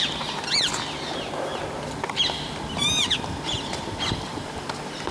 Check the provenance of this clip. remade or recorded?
recorded